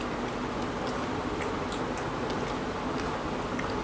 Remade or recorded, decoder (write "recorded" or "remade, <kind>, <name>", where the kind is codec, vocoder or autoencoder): recorded